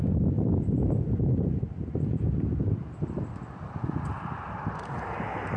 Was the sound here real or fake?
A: real